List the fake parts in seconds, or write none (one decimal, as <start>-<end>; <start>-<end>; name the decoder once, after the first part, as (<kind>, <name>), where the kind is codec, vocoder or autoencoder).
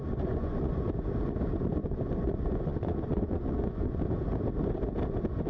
0.0-0.7 (vocoder, Vocos); 1.8-4.0